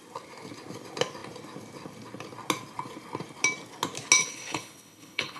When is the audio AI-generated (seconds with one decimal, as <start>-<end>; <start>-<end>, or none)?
4.2-5.4